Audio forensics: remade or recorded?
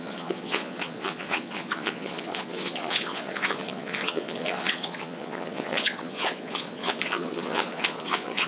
remade